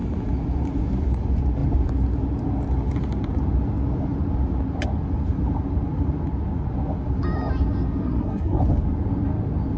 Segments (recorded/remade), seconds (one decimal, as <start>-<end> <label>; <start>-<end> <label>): 0.0-8.0 recorded; 8.0-8.6 remade; 8.6-9.8 recorded